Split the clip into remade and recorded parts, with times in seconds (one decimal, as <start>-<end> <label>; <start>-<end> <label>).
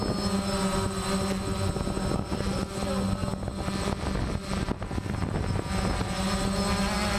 0.0-7.2 recorded